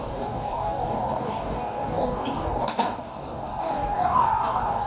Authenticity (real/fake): fake